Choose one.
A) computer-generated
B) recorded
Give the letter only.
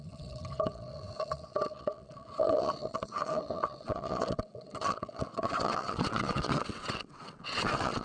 A